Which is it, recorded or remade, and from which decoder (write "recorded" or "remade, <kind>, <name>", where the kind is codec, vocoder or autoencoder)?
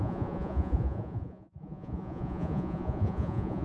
remade, vocoder, Vocos